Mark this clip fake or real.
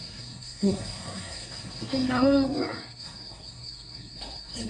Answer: fake